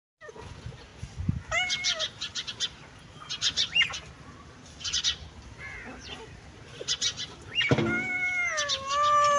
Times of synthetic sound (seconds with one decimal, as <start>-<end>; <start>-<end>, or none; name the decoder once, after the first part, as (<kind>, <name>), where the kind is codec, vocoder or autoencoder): none